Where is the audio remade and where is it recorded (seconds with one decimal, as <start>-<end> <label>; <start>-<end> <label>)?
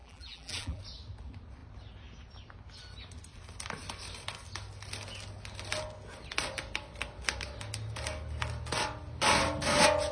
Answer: 0.0-0.8 remade; 0.8-10.1 recorded